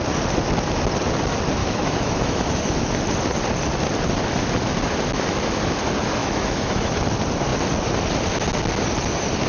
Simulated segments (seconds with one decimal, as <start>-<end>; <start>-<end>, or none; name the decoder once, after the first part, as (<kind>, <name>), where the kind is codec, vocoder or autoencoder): 1.6-2.9 (autoencoder, DAC-VAE); 6.2-7.0